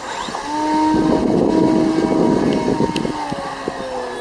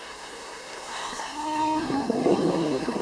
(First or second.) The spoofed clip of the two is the second